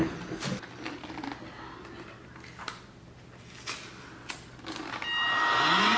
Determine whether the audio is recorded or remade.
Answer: recorded